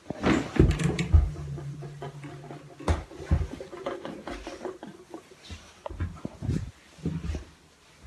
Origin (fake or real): real